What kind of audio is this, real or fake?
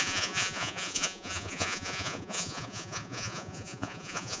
fake